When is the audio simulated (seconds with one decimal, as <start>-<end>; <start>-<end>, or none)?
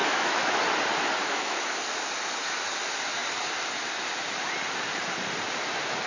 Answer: 0.0-0.6; 1.2-1.8